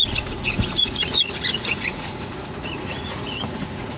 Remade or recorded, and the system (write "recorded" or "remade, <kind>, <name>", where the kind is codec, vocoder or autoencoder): remade, vocoder, Vocos